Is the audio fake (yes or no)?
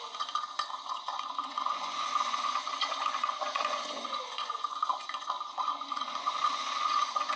yes